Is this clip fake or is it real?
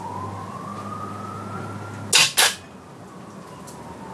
real